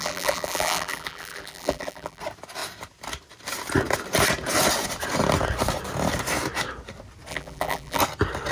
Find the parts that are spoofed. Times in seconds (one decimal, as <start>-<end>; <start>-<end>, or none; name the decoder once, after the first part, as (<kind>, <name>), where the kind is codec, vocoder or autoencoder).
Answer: 0.0-2.2 (vocoder, BigVGAN v2); 7.3-8.0